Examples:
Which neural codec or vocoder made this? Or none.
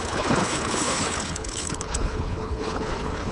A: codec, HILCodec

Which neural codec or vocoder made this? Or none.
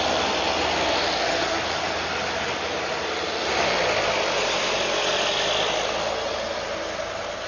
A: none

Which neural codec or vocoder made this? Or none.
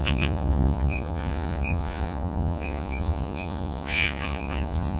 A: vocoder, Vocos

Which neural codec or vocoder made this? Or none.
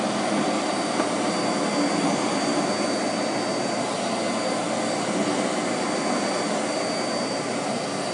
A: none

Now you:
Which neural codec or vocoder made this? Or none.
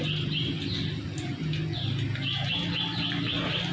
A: none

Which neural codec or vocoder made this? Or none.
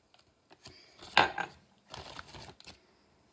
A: none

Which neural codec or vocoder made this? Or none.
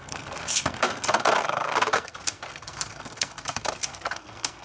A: codec, SNAC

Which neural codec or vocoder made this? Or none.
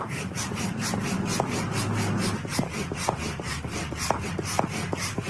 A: none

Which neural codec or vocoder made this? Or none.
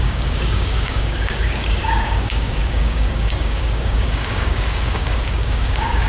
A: codec, DAC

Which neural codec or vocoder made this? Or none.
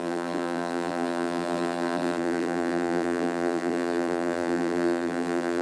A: vocoder, BigVGAN v2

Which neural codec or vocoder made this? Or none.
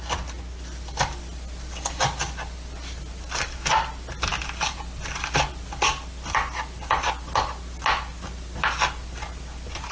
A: none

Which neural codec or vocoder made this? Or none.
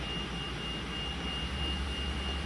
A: none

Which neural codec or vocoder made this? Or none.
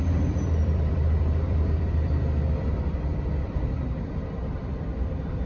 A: vocoder, BigVGAN v2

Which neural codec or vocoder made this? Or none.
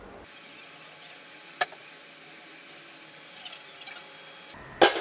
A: none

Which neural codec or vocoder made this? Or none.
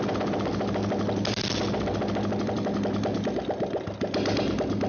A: none